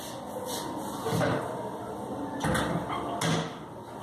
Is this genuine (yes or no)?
yes